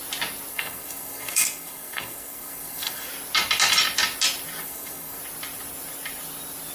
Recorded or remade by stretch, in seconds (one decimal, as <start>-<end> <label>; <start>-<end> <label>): 0.0-0.5 recorded; 0.5-3.1 remade; 3.1-4.6 recorded; 4.6-5.2 remade; 5.2-6.7 recorded